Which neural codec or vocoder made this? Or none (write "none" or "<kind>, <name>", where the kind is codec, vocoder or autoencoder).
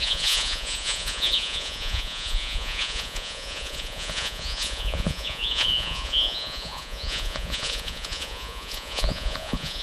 vocoder, Vocos